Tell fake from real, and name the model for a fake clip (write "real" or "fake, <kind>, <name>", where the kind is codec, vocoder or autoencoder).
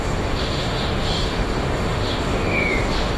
fake, autoencoder, DAC-VAE